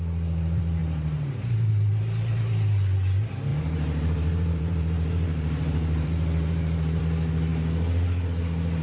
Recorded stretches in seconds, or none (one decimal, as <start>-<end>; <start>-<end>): 0.0-0.8; 1.7-3.5; 7.0-8.8

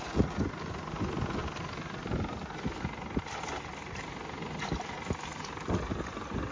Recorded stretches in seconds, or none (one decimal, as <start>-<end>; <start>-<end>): 0.0-6.5

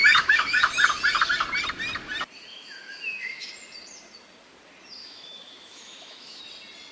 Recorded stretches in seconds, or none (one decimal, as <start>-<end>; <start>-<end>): 0.7-2.5; 3.5-5.0; 6.4-6.9

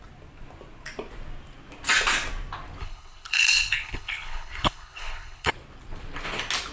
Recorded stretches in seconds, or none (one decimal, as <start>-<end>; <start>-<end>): 0.0-2.8; 5.5-6.7

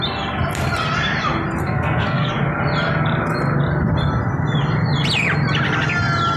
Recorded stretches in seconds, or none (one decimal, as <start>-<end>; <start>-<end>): 0.0-1.6; 2.3-6.4

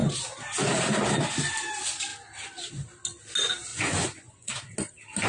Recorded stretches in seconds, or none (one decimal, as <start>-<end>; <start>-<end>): 0.0-3.7; 4.5-5.3